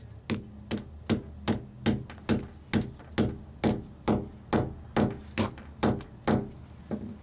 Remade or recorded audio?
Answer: recorded